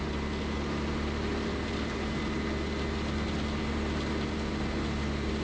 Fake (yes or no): no